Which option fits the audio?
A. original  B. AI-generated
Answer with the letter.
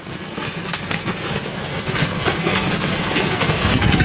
B